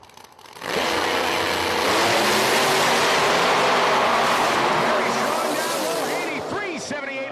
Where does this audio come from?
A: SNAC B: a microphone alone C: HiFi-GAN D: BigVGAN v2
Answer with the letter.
B